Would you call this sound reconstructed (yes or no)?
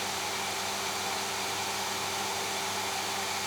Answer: no